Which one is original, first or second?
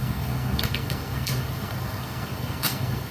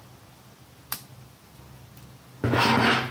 second